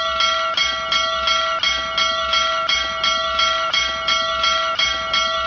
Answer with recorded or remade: recorded